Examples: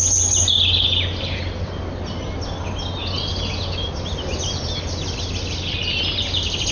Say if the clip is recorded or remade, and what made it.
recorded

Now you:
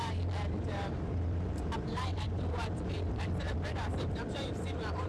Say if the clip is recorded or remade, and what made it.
remade, vocoder, BigVGAN v2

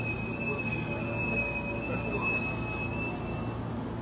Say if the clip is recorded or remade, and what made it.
recorded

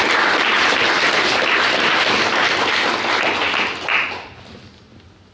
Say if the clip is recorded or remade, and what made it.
recorded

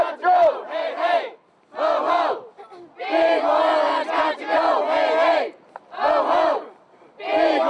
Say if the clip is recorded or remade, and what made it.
recorded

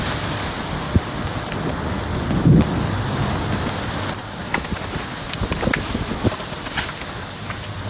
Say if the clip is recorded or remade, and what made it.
recorded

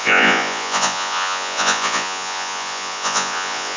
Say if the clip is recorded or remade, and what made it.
remade, vocoder, Vocos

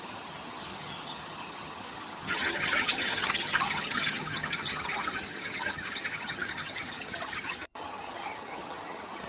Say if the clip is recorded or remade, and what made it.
remade, vocoder, HiFi-GAN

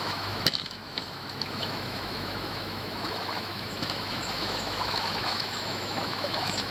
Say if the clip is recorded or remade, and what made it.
remade, autoencoder, DAC-VAE